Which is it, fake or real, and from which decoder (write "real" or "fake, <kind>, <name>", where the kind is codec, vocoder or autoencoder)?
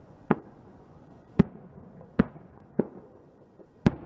fake, vocoder, Vocos